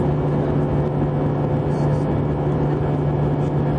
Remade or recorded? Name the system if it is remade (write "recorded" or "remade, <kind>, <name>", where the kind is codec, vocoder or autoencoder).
recorded